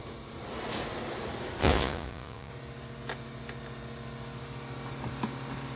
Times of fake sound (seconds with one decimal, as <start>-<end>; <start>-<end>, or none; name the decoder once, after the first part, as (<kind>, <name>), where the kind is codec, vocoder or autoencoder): 1.6-2.5 (vocoder, Vocos)